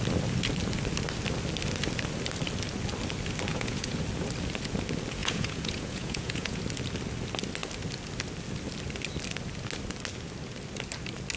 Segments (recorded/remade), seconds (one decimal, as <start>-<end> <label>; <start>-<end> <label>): 0.0-3.5 recorded; 3.5-4.0 remade; 4.0-5.2 recorded; 5.2-6.6 remade; 6.6-11.4 recorded